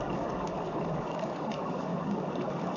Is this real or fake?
fake